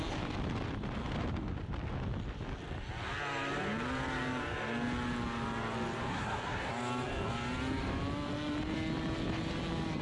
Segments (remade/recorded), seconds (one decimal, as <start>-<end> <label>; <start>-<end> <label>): 0.0-6.1 recorded; 6.1-6.7 remade; 6.7-10.0 recorded